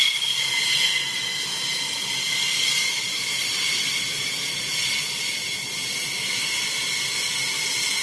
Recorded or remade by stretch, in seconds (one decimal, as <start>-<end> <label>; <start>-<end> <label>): 0.0-3.4 recorded; 3.4-4.2 remade; 4.2-8.0 recorded